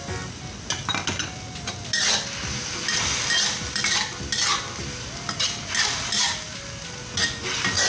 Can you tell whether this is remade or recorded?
recorded